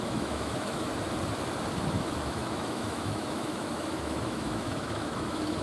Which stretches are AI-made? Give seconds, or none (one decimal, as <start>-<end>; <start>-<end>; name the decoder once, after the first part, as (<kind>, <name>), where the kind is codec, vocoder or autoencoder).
0.0-0.9 (autoencoder, DAC-VAE); 1.9-5.6